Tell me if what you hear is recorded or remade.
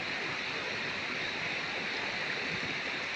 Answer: recorded